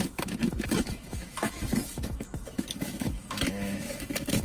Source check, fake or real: fake